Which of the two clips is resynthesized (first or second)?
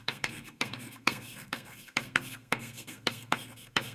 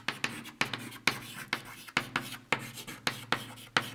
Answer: first